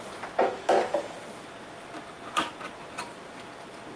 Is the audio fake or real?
real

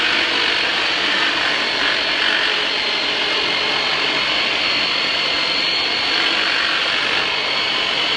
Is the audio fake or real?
real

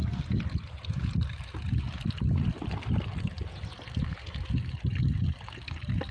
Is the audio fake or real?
real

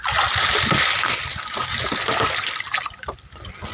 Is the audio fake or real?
real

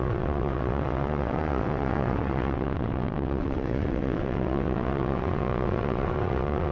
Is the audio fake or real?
fake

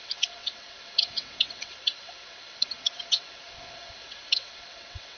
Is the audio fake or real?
fake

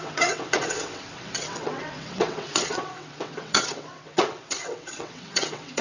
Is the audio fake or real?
fake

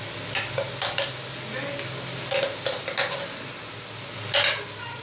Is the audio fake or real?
real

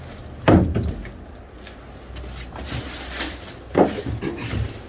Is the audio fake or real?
real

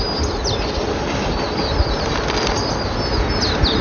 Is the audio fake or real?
real